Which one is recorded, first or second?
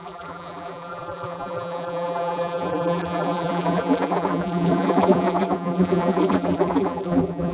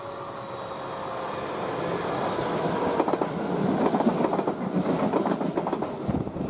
second